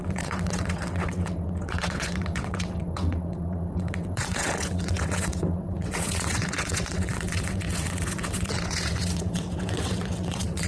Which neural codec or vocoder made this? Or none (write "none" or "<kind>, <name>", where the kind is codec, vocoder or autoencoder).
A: vocoder, WaveNeXt